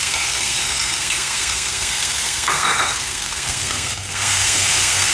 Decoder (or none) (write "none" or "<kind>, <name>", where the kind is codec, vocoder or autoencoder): codec, SNAC